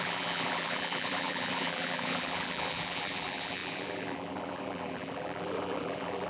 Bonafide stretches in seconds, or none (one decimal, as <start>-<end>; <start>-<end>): none